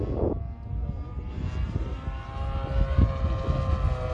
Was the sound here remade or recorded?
recorded